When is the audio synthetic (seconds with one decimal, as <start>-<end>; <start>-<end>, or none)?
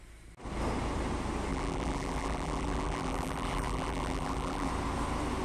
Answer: 1.5-4.7